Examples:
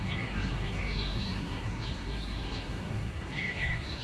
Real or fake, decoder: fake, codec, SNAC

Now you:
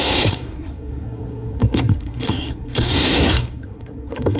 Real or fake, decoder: fake, codec, SNAC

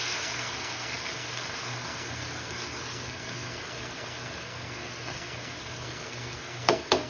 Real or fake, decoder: fake, codec, SNAC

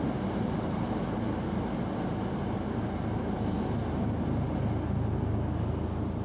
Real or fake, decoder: real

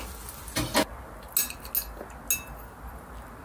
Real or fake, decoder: real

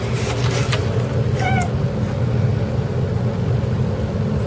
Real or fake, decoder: real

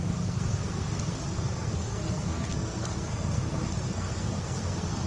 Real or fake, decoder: fake, codec, SNAC